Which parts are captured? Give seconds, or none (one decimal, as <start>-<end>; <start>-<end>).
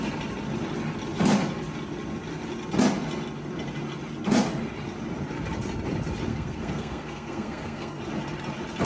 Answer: 0.0-6.3; 8.0-8.9